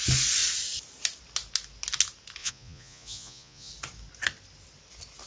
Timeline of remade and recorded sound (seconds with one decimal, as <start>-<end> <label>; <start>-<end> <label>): 0.0-2.4 recorded; 2.4-3.7 remade; 3.7-5.3 recorded